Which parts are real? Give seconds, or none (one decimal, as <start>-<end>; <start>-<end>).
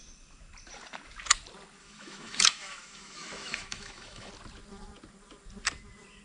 0.0-1.8; 4.3-6.2